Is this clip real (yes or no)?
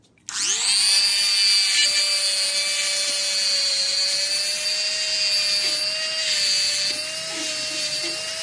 yes